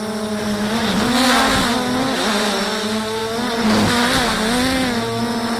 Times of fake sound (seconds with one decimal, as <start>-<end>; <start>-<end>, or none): none